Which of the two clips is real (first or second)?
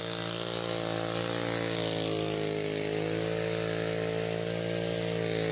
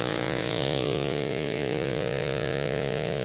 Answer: first